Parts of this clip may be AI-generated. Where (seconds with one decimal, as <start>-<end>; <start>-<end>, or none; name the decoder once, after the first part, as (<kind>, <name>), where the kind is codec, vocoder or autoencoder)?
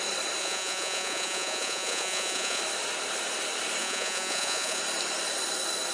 0.4-2.6 (vocoder, Vocos); 3.8-4.8